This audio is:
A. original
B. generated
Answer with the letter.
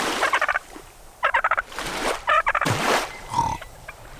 B